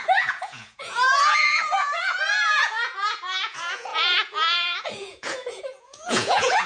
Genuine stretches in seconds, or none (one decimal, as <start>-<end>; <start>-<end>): none